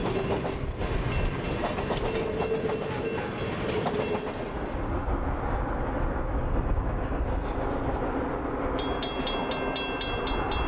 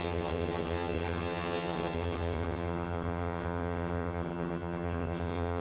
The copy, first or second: second